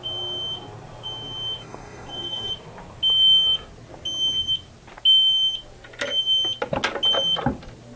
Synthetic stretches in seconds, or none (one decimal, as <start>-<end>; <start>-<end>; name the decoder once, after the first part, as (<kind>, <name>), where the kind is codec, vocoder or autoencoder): 1.6-2.5 (codec, DAC)